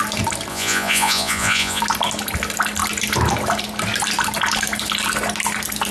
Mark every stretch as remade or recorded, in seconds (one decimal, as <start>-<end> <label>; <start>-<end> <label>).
0.0-0.5 recorded; 0.5-1.8 remade; 1.8-5.9 recorded

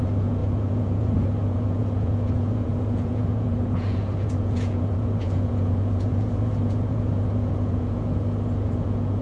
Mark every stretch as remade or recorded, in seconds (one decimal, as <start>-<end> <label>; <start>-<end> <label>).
0.0-9.2 remade